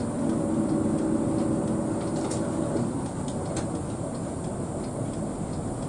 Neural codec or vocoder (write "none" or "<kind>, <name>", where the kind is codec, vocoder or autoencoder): none